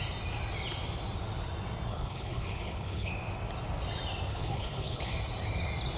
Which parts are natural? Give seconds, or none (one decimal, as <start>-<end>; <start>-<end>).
0.0-1.9; 3.1-4.3; 5.1-6.0